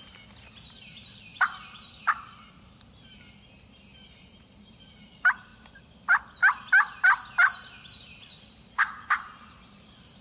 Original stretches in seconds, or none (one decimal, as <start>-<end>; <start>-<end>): 5.5-8.0